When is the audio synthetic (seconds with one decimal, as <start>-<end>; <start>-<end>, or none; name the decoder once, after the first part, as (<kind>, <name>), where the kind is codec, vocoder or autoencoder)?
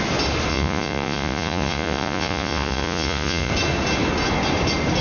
0.5-3.5 (vocoder, Vocos)